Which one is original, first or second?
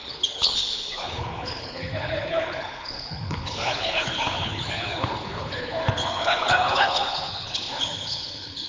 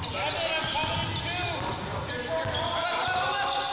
second